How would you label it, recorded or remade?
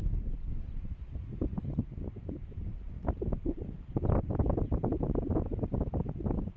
recorded